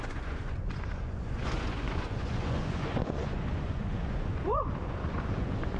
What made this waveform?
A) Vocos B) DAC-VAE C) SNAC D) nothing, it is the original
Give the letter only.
A